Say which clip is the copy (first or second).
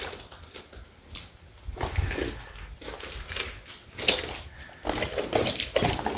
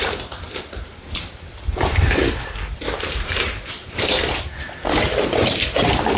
second